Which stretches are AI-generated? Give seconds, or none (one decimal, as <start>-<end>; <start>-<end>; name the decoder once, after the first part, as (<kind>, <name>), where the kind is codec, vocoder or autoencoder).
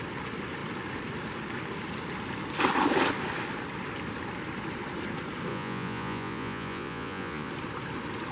5.5-7.5 (vocoder, Vocos)